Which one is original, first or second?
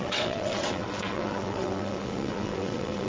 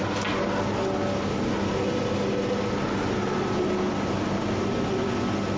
second